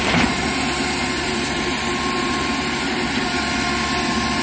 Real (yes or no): no